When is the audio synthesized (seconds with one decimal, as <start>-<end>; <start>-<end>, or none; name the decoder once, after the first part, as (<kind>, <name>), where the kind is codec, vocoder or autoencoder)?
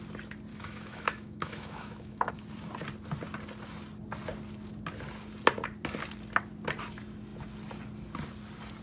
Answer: 0.5-2.3 (autoencoder, DAC-VAE)